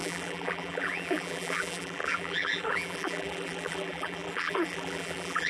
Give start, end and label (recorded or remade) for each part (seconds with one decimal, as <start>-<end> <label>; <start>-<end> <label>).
0.0-5.5 remade